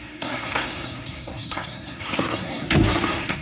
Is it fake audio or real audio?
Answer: fake